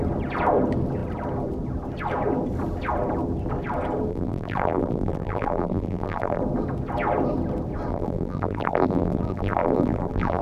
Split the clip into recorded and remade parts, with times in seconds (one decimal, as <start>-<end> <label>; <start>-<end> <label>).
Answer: 0.0-4.1 recorded; 4.1-6.4 remade; 6.4-7.9 recorded; 7.9-10.4 remade